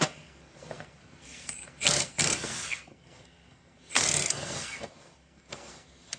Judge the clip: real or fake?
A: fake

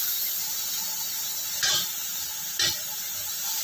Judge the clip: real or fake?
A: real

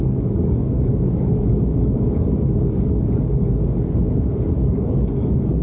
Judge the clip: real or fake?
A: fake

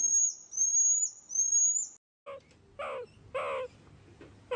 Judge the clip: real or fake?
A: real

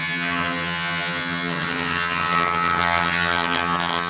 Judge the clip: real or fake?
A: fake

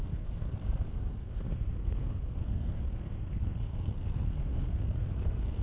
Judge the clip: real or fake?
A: fake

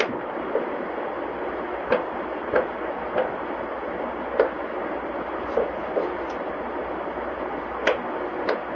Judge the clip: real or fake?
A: real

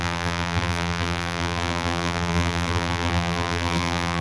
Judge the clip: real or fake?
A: fake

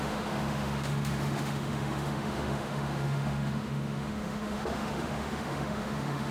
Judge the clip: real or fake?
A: fake